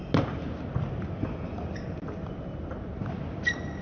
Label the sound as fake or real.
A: real